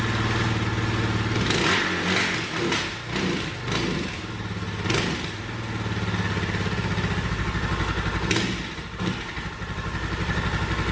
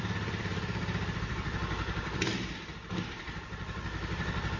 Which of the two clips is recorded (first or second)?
first